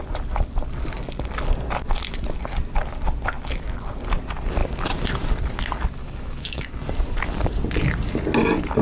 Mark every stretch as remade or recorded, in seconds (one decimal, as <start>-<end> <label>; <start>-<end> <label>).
0.0-6.0 recorded; 6.0-6.7 remade; 6.7-8.8 recorded